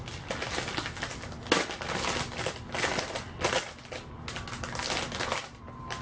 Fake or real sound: real